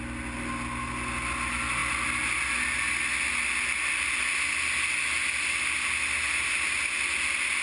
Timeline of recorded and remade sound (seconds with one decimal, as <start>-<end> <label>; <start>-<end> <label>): 0.0-7.6 recorded